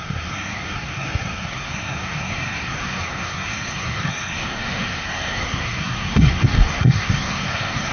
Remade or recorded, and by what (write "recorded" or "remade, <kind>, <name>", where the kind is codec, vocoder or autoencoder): remade, codec, SNAC